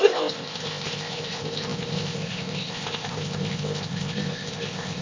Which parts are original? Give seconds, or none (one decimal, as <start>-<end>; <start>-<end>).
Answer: none